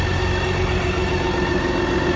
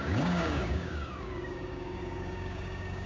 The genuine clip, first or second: first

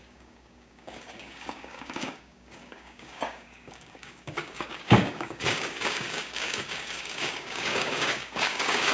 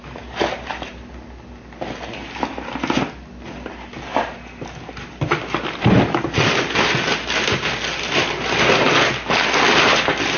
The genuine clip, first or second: second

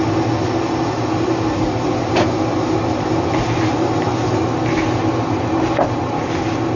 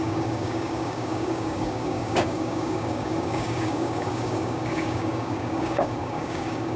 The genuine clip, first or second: first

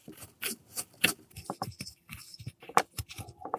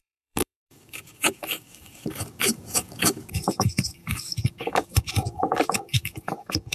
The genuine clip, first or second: first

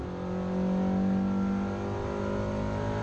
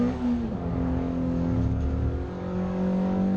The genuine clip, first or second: first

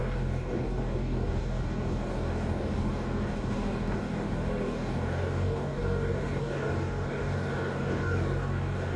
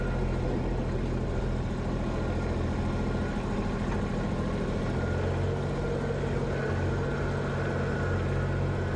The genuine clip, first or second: second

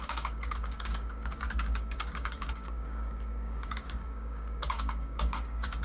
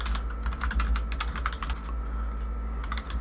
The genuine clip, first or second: second